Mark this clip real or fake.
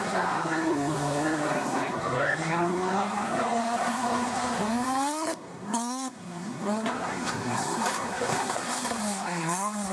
fake